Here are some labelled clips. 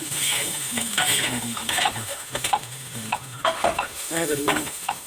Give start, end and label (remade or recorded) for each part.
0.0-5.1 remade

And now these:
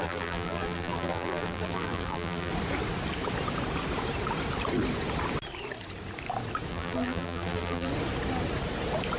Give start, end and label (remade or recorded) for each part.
0.0-2.5 remade; 2.5-6.7 recorded; 6.7-7.9 remade; 7.9-9.2 recorded

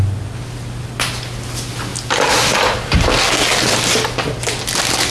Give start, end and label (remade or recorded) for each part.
0.0-5.1 recorded

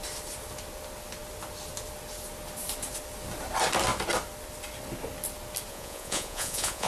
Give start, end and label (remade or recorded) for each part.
0.0-5.7 recorded; 5.7-6.9 remade

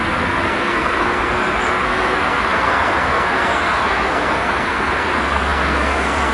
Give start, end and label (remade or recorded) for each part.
0.0-6.3 remade

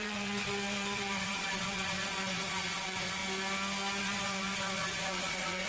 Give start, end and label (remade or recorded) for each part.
0.0-3.2 remade; 3.2-4.0 recorded; 4.0-5.7 remade

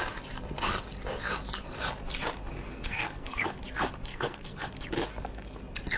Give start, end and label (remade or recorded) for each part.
0.0-2.6 recorded; 2.6-3.6 remade; 3.6-4.1 recorded; 4.1-4.7 remade; 4.7-6.0 recorded

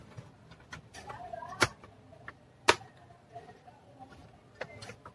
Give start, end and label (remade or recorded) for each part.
0.0-1.1 recorded; 1.1-1.7 remade; 1.7-3.5 recorded; 3.5-4.2 remade; 4.2-5.1 recorded